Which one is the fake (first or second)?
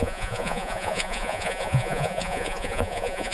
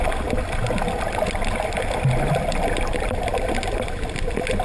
first